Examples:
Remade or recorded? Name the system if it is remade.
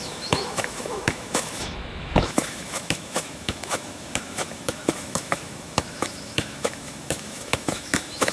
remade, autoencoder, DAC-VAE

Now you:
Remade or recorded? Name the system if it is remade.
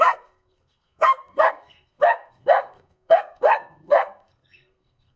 remade, codec, SNAC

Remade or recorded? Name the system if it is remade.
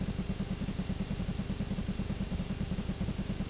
remade, vocoder, BigVGAN v2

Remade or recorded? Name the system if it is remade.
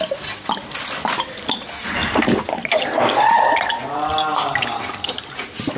recorded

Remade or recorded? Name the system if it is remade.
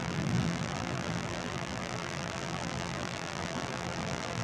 remade, vocoder, BigVGAN v2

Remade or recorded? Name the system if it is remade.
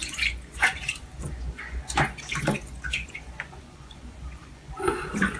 remade, vocoder, Vocos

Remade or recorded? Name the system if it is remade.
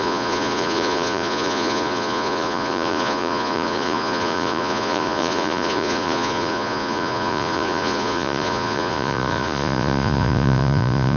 remade, vocoder, Vocos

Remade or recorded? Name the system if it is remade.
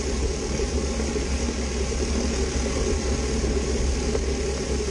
recorded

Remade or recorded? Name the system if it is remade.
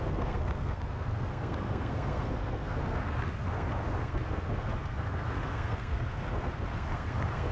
remade, codec, SNAC